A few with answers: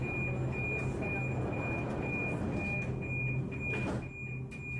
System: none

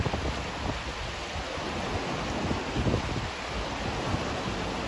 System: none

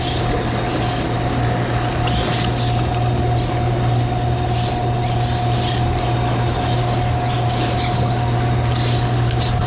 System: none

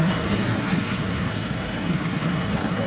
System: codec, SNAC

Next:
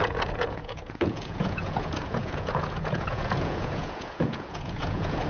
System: vocoder, Vocos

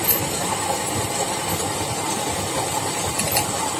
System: none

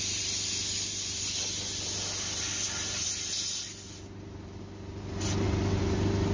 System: none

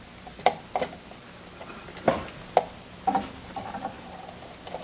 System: none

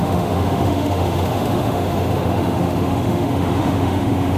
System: autoencoder, DAC-VAE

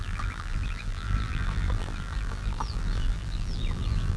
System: vocoder, BigVGAN v2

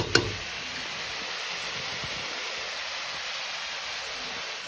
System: none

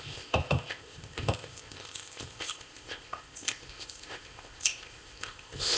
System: codec, ZipCodec